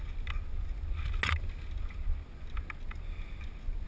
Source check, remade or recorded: recorded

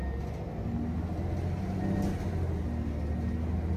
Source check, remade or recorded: recorded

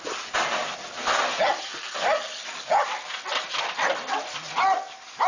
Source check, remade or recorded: recorded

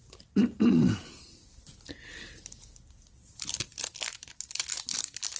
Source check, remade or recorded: recorded